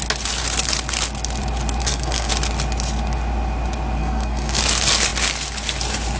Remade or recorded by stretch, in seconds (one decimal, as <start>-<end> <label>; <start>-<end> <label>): 0.0-1.8 recorded; 1.8-2.3 remade; 2.3-4.0 recorded; 4.0-4.6 remade; 4.6-6.2 recorded